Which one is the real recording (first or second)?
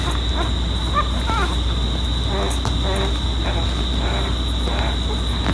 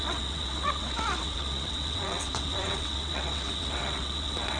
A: first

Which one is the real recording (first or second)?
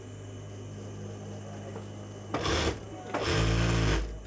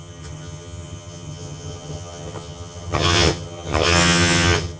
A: first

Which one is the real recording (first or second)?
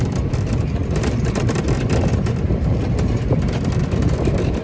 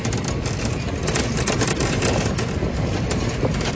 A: second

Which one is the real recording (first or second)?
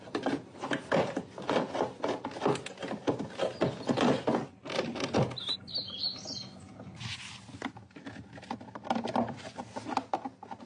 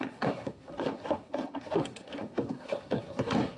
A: first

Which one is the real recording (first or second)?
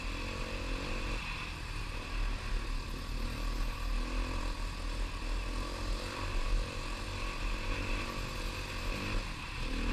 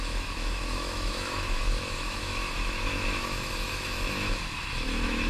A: first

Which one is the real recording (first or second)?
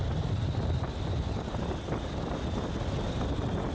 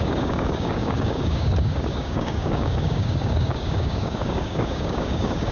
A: first